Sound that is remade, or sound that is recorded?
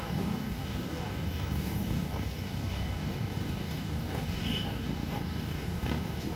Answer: remade